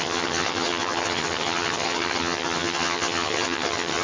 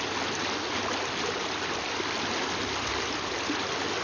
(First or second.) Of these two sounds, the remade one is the first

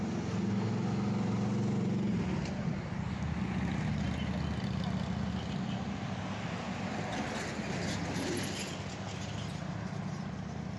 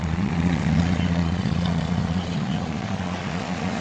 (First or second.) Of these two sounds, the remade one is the second